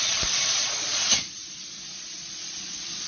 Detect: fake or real fake